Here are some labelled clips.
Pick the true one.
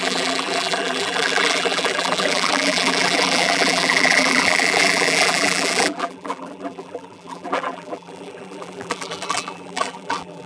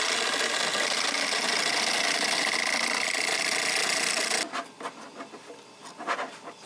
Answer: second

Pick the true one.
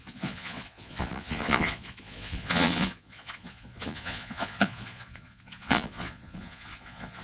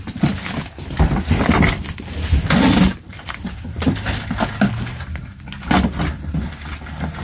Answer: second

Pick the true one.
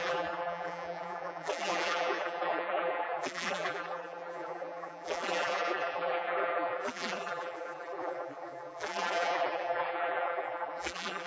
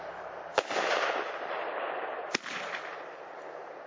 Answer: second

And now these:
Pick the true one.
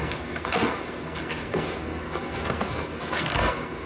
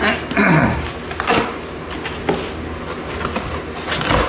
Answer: second